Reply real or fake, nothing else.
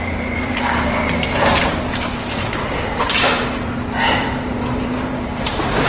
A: fake